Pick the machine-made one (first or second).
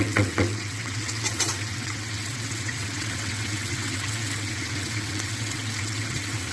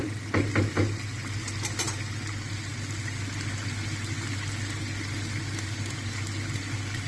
first